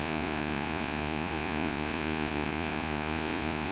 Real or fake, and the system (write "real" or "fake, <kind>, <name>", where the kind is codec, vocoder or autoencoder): fake, vocoder, Vocos